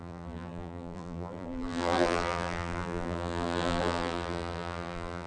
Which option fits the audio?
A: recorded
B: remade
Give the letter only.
B